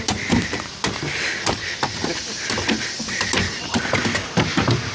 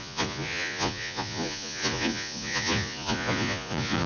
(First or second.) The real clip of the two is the first